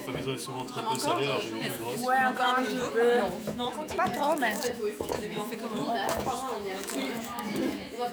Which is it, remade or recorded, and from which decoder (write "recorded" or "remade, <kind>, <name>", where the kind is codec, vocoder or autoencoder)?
remade, autoencoder, DAC-VAE